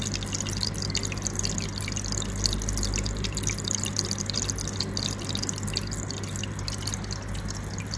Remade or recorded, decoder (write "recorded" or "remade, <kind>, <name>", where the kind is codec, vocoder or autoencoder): recorded